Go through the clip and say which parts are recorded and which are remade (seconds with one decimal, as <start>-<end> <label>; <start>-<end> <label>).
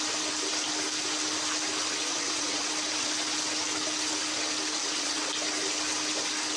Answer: 0.0-2.1 recorded; 2.1-2.7 remade; 2.7-4.8 recorded; 4.8-5.3 remade; 5.3-6.6 recorded